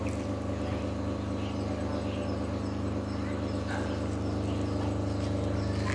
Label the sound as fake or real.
real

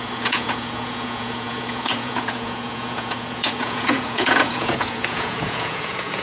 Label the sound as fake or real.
fake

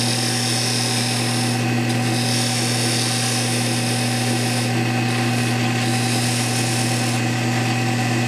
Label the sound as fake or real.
real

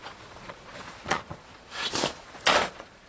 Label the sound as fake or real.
fake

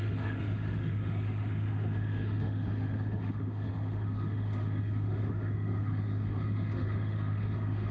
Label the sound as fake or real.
fake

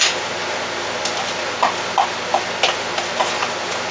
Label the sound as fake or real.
real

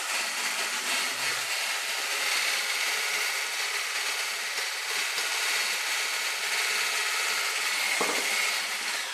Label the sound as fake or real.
real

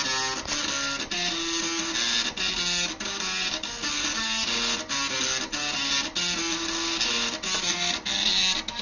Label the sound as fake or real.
real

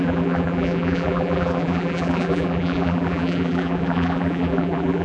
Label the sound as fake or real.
fake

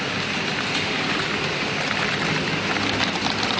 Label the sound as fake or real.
real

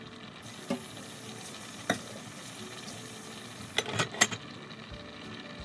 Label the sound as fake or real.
real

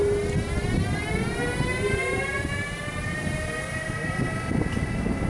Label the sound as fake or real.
real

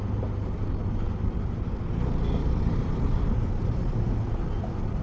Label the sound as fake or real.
real